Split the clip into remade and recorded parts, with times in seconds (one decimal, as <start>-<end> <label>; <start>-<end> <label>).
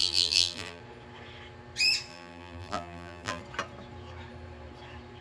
0.0-0.8 remade; 0.8-2.1 recorded; 2.1-3.4 remade; 3.4-5.2 recorded